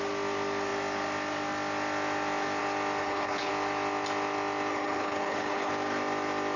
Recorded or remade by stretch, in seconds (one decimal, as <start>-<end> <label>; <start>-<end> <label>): 0.0-3.0 recorded; 3.0-3.5 remade; 3.5-4.7 recorded; 4.7-5.7 remade; 5.7-6.6 recorded